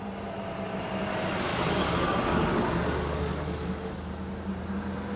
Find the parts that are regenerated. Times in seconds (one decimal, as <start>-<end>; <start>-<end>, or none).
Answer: 1.5-4.1